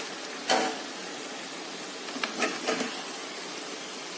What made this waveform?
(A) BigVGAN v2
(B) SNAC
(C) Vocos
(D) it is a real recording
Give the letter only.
D